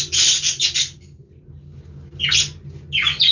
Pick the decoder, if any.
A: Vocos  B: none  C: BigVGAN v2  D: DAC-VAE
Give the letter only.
B